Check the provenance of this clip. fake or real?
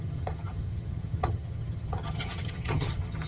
fake